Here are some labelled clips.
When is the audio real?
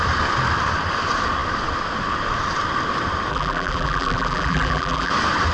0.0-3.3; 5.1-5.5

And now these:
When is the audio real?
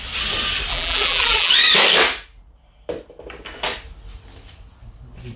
0.0-0.7; 1.5-5.4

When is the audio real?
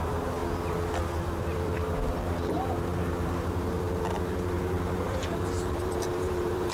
0.4-1.0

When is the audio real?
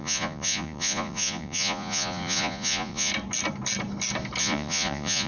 3.1-4.4